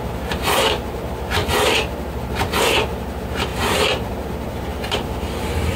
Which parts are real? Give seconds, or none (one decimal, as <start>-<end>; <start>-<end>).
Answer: 1.4-2.6